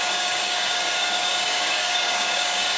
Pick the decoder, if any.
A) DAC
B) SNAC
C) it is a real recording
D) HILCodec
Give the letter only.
A